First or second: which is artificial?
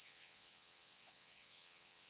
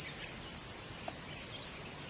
first